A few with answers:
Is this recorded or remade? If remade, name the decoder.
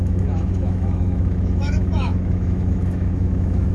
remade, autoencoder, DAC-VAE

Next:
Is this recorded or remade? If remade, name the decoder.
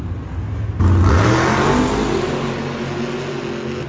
recorded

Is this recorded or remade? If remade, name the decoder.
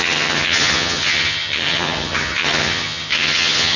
remade, vocoder, HiFi-GAN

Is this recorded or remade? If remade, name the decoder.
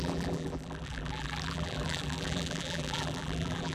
remade, vocoder, BigVGAN v2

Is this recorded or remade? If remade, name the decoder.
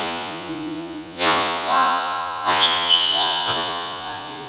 remade, vocoder, Vocos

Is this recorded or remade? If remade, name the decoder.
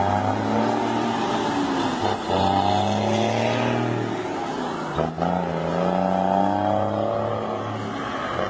recorded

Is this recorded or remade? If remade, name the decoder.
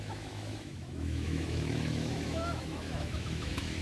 remade, autoencoder, DAC-VAE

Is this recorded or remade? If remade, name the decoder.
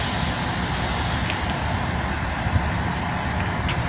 recorded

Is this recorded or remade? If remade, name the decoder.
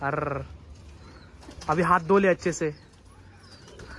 recorded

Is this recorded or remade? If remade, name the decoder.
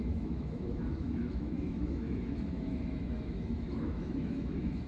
remade, autoencoder, DAC-VAE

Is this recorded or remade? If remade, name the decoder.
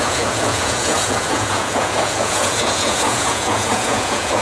remade, vocoder, Vocos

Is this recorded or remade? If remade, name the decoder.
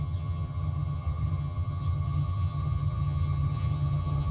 remade, vocoder, HiFi-GAN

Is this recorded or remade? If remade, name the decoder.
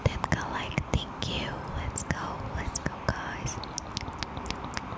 recorded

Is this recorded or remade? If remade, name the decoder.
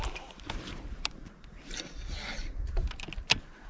recorded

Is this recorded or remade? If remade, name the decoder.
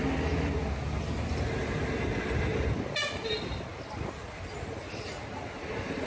recorded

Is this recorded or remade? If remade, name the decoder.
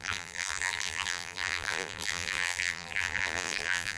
remade, vocoder, BigVGAN v2